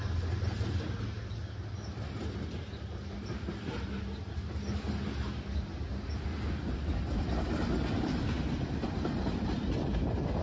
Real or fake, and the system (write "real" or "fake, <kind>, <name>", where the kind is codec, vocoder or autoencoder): real